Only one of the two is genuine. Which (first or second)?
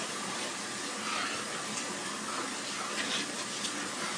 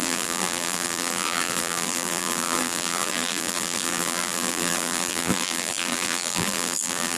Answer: first